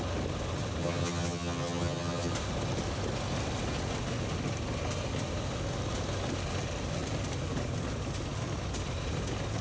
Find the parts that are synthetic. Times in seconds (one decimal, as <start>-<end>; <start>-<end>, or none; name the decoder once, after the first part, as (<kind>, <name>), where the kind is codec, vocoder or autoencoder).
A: 0.8-2.3 (vocoder, HiFi-GAN)